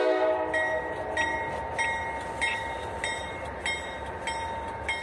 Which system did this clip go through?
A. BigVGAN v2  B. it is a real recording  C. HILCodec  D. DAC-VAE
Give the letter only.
B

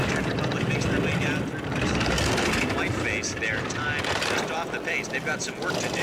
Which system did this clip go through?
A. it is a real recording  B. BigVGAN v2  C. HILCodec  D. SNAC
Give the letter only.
A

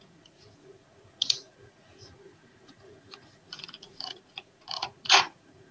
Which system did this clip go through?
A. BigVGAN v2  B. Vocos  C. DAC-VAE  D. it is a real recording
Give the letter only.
B